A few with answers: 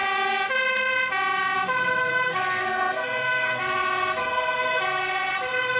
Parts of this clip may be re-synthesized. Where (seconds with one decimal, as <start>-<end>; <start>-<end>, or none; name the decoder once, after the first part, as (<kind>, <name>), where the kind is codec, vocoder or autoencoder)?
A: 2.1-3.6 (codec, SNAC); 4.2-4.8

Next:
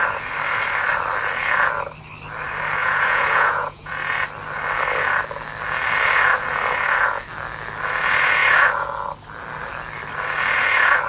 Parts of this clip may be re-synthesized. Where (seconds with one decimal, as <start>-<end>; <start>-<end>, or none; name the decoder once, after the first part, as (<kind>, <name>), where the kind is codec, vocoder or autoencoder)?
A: 2.8-3.9 (vocoder, Vocos)

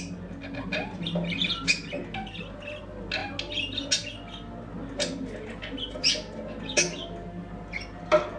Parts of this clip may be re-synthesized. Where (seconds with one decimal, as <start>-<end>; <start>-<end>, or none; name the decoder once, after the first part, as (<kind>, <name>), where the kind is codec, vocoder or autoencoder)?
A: none

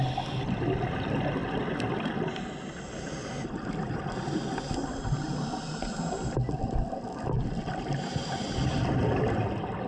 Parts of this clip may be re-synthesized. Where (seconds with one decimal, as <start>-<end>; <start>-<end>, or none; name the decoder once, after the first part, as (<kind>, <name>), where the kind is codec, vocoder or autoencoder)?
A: none